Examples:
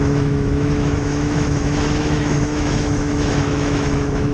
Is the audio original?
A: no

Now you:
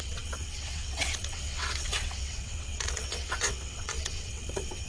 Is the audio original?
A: no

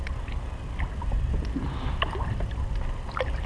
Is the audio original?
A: yes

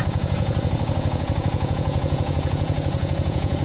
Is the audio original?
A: no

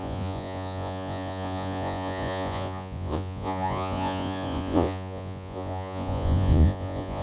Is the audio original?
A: no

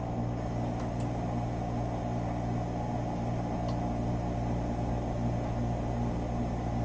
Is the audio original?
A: yes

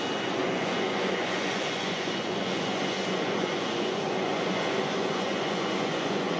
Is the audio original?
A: no